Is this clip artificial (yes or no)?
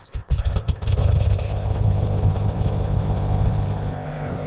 yes